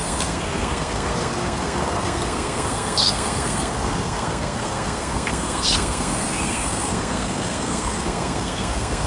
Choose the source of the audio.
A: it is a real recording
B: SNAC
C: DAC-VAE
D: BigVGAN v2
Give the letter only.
B